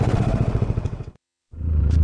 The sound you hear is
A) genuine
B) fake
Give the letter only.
B